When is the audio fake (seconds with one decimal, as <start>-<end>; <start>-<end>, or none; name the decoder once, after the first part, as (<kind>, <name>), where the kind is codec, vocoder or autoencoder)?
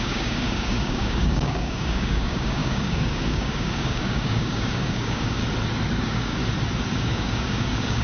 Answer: 0.0-5.4 (codec, DAC); 6.0-6.4; 7.0-8.0